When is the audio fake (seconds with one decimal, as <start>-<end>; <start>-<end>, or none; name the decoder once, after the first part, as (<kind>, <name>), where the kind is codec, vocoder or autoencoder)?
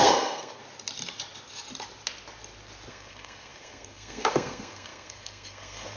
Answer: 0.0-0.6 (codec, SNAC); 2.9-6.0